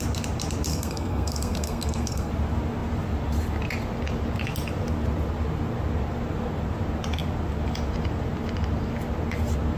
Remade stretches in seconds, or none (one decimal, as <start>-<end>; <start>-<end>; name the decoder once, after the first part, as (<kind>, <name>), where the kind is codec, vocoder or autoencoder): 0.7-2.3 (codec, SNAC)